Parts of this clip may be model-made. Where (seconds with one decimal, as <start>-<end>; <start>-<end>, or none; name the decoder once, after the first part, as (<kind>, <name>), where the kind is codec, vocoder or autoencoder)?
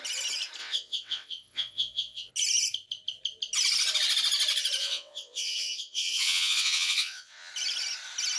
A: 0.6-2.3 (vocoder, WaveNeXt); 4.8-7.5